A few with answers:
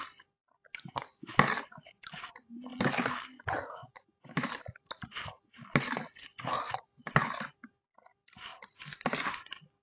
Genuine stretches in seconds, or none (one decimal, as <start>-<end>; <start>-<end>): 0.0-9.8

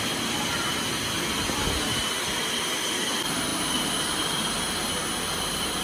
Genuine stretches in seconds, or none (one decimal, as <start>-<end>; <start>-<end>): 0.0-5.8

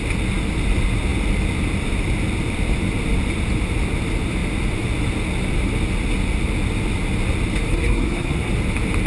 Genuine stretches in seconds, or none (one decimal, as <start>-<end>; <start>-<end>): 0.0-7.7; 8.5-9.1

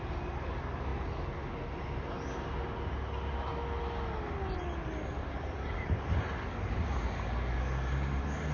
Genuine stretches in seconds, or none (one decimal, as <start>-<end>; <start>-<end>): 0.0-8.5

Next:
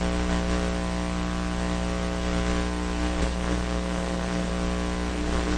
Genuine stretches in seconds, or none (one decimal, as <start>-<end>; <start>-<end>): 0.0-3.2; 4.5-5.1

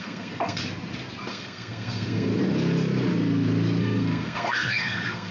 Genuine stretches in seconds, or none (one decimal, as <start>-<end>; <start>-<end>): 0.6-1.3; 2.3-3.8

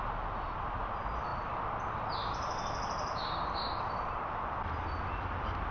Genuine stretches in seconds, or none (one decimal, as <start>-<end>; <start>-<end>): 0.0-5.7